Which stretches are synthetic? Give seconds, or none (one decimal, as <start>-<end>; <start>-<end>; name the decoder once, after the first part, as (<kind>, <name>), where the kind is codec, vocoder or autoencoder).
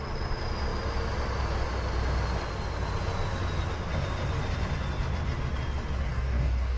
6.1-6.8 (codec, DAC)